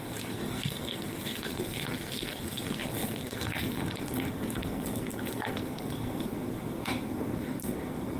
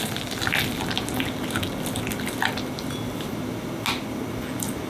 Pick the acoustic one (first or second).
second